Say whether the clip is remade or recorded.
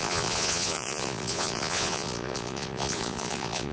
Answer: remade